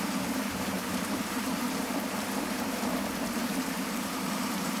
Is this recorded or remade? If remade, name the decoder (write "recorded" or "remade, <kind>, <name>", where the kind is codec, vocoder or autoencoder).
remade, vocoder, BigVGAN v2